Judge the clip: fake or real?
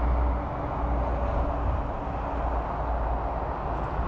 real